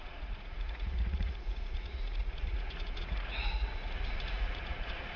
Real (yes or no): no